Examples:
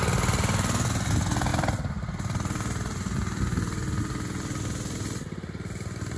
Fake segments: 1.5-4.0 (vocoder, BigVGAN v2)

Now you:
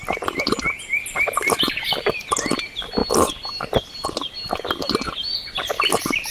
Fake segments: none

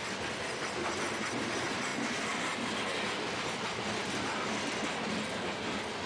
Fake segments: none

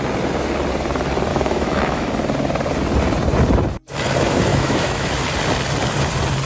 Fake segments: 1.3-2.1 (autoencoder, DAC-VAE); 4.5-5.1

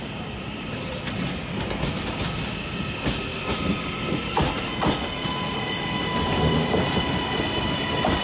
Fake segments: none

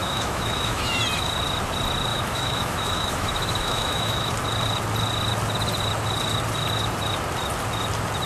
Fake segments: 0.0-1.0 (autoencoder, DAC-VAE); 2.1-4.3

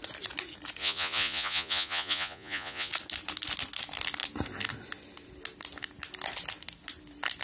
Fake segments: 0.8-2.9 (vocoder, Vocos)